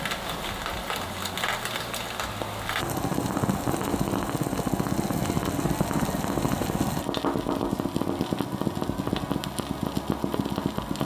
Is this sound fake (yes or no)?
no